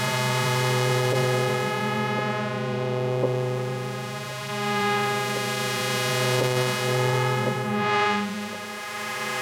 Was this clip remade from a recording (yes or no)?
yes